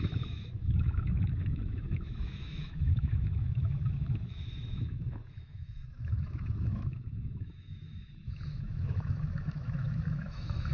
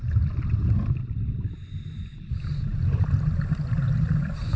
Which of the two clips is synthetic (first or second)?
first